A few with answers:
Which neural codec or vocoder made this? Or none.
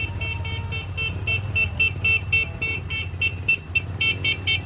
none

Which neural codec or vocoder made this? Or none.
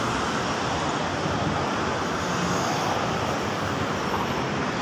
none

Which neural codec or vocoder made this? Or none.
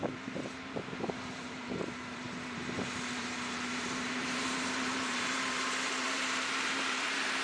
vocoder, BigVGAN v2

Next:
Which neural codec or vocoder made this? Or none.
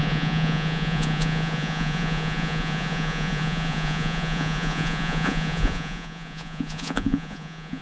vocoder, Vocos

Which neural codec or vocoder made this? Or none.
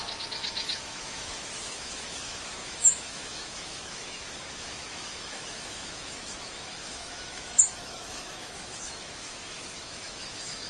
autoencoder, DAC-VAE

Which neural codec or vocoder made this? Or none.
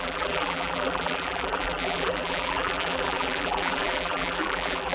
vocoder, BigVGAN v2